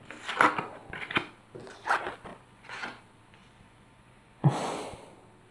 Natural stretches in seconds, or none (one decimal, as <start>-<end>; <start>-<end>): 0.0-2.3; 3.0-3.4; 4.8-5.5